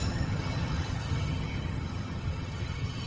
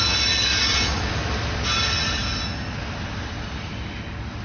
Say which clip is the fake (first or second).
first